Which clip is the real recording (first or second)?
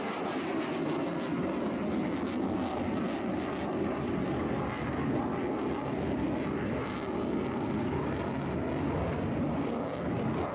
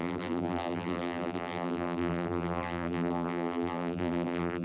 first